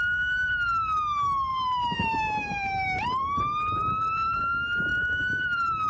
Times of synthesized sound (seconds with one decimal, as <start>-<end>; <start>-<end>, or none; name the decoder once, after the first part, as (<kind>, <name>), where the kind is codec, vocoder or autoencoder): 1.5-3.4 (vocoder, BigVGAN v2); 3.8-4.4; 4.9-5.9